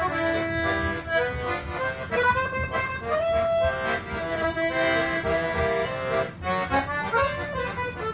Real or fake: real